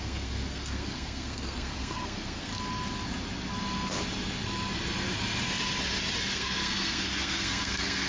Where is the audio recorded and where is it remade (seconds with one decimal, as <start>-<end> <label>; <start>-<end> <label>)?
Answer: 0.0-2.5 remade; 2.5-6.3 recorded; 6.3-8.1 remade